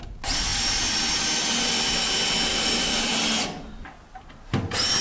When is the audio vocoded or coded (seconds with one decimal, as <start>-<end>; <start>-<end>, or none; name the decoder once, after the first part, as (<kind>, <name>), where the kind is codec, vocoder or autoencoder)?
0.5-1.1 (vocoder, BigVGAN v2); 2.5-4.2